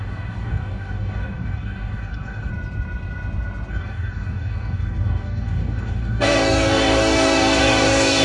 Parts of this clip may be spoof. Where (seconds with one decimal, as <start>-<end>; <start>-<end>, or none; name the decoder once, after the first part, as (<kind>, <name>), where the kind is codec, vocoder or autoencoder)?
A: 0.0-2.5 (codec, DAC); 3.7-8.2